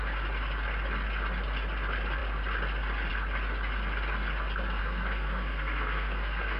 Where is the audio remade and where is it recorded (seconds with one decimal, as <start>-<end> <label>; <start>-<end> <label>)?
0.0-4.8 recorded; 4.8-6.6 remade